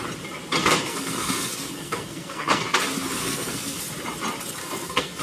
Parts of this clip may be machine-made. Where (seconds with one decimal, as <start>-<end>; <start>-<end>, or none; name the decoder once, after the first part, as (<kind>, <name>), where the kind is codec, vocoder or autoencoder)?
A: 0.6-2.8 (codec, SNAC); 3.2-3.8; 4.6-5.2